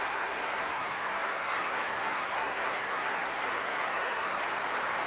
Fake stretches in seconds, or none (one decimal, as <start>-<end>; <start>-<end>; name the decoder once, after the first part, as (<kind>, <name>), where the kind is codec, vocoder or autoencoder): 0.0-4.4 (codec, SNAC)